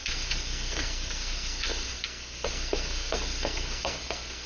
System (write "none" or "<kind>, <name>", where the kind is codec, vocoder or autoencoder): codec, SNAC